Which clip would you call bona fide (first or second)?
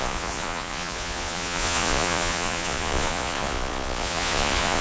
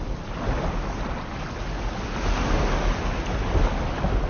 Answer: second